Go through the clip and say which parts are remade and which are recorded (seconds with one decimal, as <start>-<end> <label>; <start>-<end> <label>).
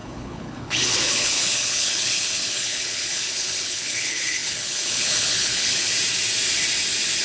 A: 0.0-5.9 remade; 5.9-7.2 recorded